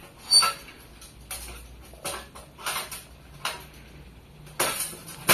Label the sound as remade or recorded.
recorded